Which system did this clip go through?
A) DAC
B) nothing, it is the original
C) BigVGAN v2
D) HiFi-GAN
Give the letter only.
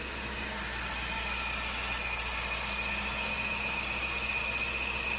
B